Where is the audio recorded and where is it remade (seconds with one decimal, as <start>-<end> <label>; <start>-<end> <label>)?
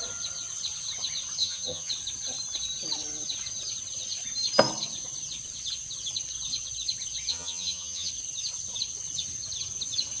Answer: 0.0-1.4 recorded; 1.4-1.9 remade; 1.9-7.3 recorded; 7.3-8.1 remade; 8.1-10.2 recorded